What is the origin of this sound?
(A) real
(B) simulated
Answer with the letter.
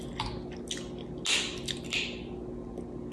A